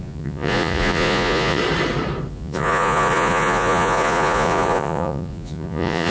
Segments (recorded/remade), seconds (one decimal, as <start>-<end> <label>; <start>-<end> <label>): 0.0-1.6 remade; 1.6-2.3 recorded; 2.3-6.1 remade